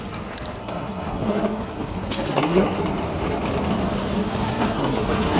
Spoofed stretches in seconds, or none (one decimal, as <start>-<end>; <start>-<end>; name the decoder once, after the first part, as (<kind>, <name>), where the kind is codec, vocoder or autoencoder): 0.6-2.8 (codec, SNAC); 4.2-5.4